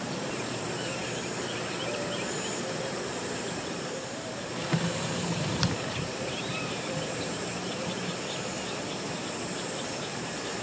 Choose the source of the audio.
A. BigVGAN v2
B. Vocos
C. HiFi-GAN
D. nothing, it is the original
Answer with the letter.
A